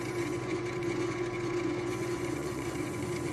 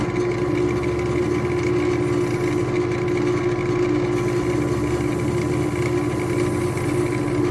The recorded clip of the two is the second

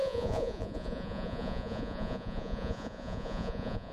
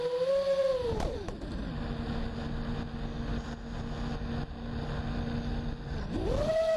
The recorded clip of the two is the second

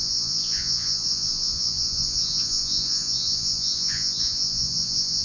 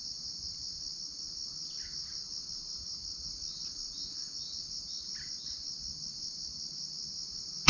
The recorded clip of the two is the second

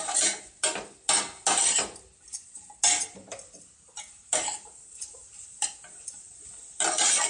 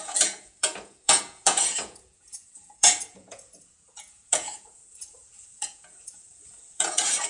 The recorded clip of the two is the first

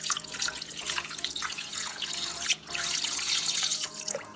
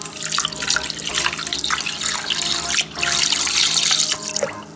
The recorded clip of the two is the second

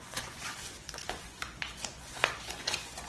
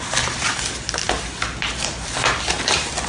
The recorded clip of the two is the second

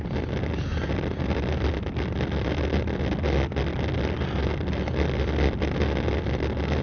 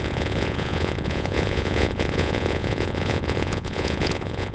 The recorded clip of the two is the first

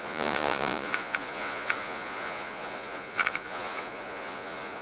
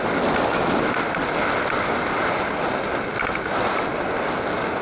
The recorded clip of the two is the second